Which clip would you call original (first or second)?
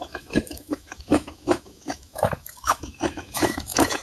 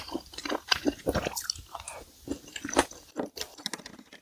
second